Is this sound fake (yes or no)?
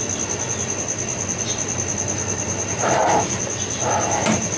no